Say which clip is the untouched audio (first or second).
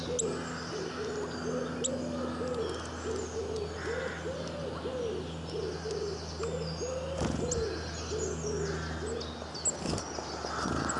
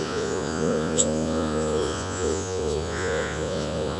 first